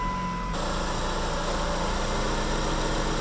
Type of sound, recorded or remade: recorded